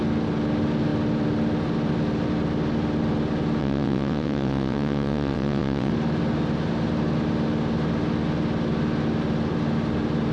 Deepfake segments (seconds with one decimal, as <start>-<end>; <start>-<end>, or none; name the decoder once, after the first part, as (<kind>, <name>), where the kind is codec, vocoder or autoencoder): 3.6-5.9 (vocoder, WaveNeXt)